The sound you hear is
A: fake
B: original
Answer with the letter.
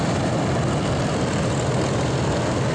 B